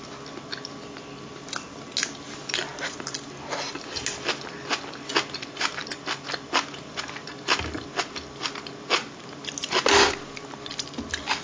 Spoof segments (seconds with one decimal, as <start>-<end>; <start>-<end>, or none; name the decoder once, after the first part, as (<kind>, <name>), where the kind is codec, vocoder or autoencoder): none